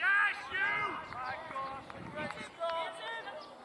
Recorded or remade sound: recorded